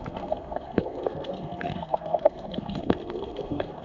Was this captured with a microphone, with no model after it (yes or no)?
no